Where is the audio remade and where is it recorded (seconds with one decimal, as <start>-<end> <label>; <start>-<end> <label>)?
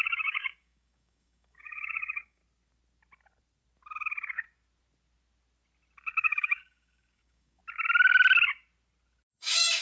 0.0-2.4 remade; 2.4-6.2 recorded; 6.2-7.6 remade; 7.6-9.4 recorded; 9.4-9.8 remade